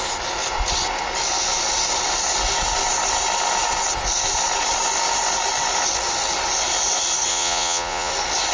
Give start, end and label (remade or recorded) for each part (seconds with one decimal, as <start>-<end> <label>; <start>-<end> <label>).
0.0-7.3 recorded; 7.3-8.1 remade; 8.1-8.5 recorded